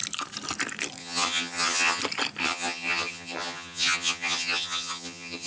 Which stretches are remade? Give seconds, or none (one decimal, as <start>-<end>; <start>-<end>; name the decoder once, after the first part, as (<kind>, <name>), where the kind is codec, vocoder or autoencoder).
1.0-2.0 (vocoder, HiFi-GAN); 2.4-5.5